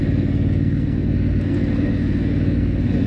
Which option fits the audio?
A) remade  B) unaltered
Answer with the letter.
A